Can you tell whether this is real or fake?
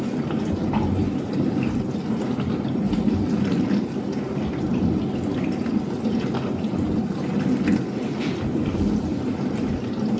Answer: real